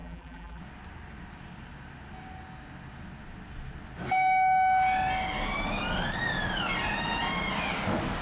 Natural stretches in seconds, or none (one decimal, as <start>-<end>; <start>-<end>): 0.6-8.2